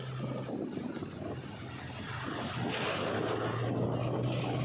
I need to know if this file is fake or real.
real